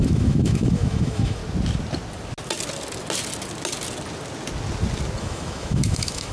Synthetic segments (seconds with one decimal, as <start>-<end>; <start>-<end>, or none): 0.0-1.4; 5.2-6.3